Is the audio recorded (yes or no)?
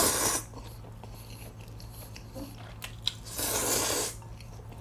yes